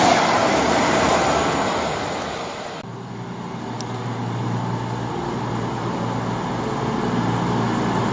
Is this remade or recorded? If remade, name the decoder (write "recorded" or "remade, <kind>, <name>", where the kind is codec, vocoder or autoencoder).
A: recorded